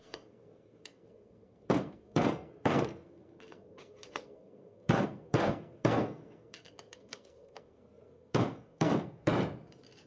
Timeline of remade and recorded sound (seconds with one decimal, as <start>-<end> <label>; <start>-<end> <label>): 0.0-9.3 remade; 9.3-10.1 recorded